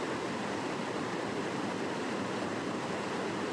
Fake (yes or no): no